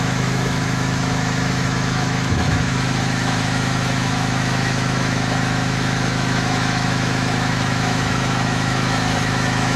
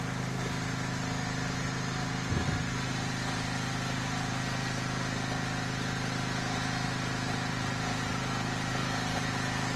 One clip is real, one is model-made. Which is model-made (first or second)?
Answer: first